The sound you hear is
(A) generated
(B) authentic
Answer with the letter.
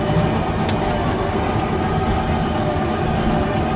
B